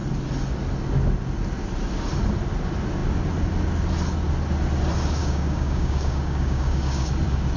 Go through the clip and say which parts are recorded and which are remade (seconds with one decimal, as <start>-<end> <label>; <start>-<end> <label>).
0.0-5.2 recorded; 5.2-7.1 remade; 7.1-7.6 recorded